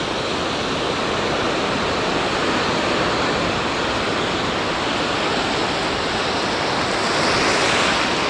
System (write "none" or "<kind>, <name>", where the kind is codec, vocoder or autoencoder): none